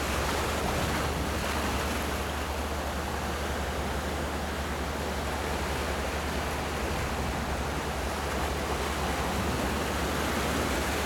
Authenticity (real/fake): real